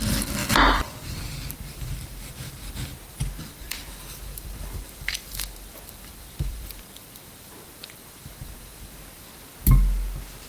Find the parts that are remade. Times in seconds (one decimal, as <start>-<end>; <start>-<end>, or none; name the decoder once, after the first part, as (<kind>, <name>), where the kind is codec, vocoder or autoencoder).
0.0-0.4 (vocoder, BigVGAN v2); 1.5-2.9; 3.4-9.5